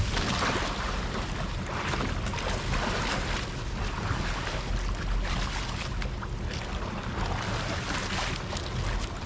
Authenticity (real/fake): real